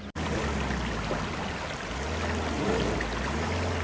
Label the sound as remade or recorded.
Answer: recorded